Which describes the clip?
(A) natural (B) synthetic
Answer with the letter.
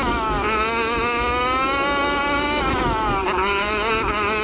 A